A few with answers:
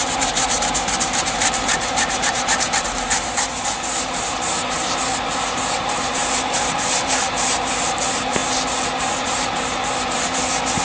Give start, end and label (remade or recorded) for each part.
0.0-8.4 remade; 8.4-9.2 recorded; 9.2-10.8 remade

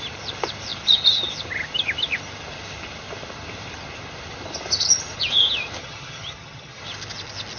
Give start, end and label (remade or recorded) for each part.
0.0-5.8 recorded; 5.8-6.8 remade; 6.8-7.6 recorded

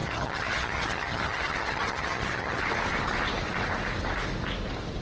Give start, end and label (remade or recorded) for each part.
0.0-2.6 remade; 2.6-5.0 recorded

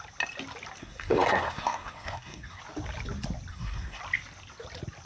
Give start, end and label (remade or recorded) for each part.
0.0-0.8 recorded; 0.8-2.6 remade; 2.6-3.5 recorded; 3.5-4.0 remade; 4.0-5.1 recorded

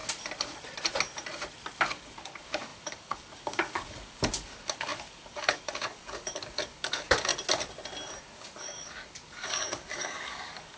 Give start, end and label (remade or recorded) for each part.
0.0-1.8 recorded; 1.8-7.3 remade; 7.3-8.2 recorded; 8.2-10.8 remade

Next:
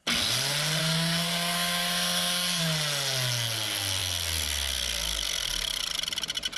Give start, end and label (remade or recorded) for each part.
0.0-0.8 recorded; 0.8-2.6 remade; 2.6-6.6 recorded

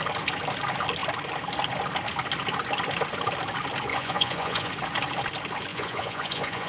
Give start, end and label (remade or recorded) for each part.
0.0-3.9 recorded; 3.9-4.7 remade; 4.7-5.7 recorded; 5.7-6.7 remade